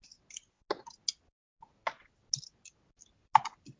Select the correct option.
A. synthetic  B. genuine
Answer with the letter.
B